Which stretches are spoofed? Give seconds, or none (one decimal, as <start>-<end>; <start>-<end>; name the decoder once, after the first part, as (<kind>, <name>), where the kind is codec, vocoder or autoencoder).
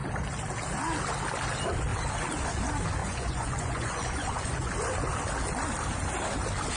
3.0-4.7 (vocoder, Vocos)